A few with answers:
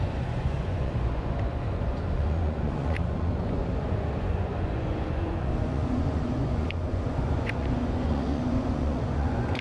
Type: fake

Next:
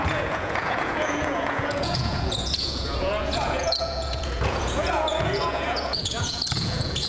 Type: fake